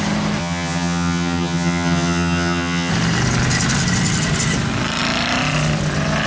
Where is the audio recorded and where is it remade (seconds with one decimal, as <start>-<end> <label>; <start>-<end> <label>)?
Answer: 0.0-0.4 recorded; 0.4-2.9 remade; 2.9-6.3 recorded